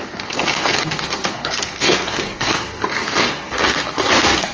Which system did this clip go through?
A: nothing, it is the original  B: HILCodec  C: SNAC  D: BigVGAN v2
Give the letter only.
C